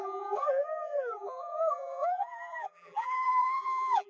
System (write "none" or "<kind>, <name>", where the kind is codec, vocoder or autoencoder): vocoder, BigVGAN v2